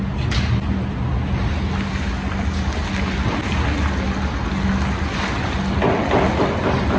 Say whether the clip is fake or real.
real